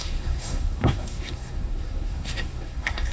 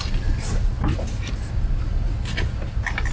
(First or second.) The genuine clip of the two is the second